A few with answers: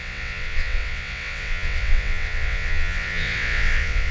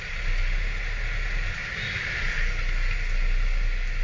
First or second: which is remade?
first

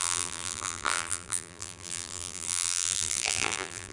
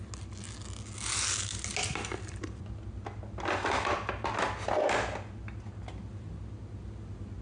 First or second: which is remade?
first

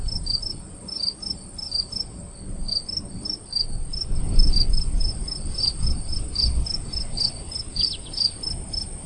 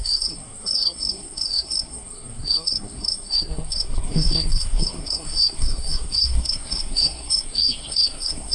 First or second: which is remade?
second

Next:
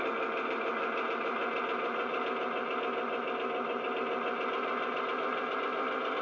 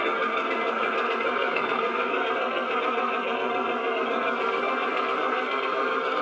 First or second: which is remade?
second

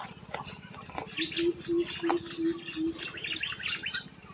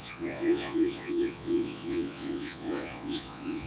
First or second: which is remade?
second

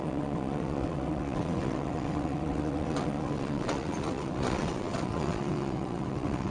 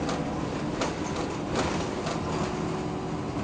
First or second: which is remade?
first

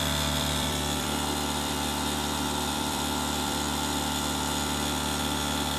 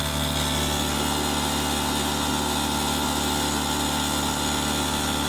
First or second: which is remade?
first